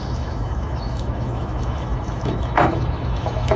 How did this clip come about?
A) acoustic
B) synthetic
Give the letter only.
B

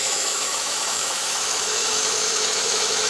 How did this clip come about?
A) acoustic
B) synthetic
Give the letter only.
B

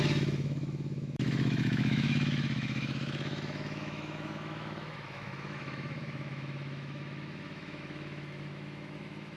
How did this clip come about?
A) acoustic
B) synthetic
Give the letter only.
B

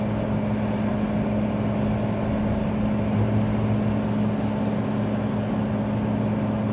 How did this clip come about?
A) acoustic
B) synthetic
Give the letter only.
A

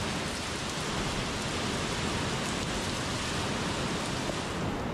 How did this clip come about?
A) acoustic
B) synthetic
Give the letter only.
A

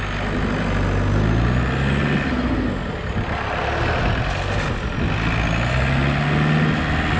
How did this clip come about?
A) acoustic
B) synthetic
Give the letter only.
A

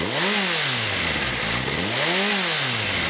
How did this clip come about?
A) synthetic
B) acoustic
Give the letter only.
B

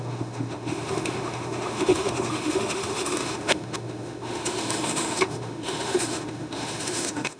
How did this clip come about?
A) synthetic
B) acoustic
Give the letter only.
A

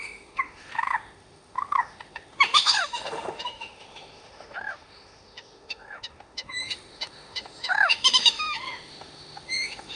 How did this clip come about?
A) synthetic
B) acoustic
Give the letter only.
A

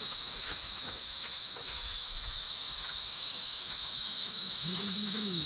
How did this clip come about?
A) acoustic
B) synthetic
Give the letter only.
B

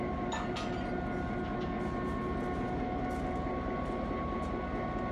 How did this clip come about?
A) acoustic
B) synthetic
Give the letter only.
A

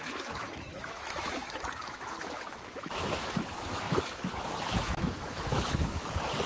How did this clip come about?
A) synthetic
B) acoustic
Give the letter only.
A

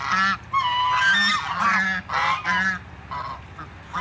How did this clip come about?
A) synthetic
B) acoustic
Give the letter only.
B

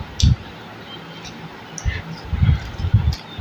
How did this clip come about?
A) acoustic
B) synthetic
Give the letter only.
A